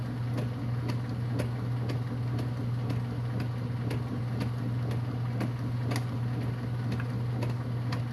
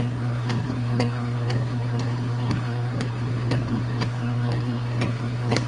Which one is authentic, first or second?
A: first